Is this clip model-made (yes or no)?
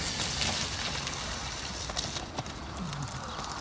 yes